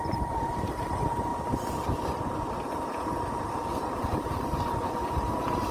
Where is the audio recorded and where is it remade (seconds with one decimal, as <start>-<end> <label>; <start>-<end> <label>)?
0.0-1.3 remade; 1.3-4.7 recorded; 4.7-5.7 remade